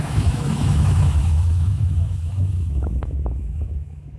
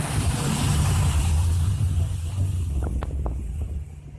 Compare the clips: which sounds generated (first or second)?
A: first